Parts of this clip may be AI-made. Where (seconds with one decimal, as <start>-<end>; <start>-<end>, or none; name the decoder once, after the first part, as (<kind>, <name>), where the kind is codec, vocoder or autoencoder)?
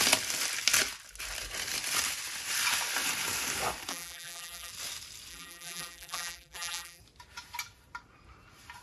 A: 3.9-4.7 (vocoder, BigVGAN v2); 5.3-7.0